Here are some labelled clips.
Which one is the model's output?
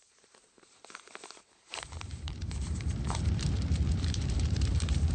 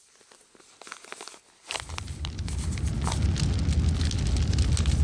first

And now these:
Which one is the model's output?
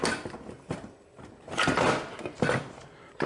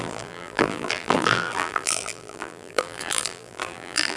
second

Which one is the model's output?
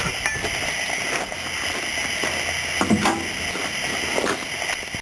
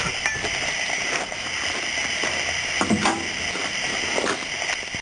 second